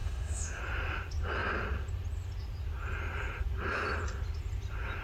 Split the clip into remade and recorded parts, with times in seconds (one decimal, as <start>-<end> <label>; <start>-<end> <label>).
0.0-0.6 remade; 0.6-5.0 recorded